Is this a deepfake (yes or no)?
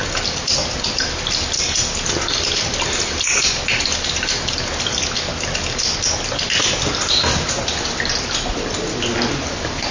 no